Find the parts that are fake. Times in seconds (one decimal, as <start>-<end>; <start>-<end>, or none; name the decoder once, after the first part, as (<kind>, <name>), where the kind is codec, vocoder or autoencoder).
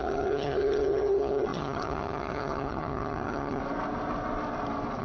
0.0-3.6 (vocoder, HiFi-GAN)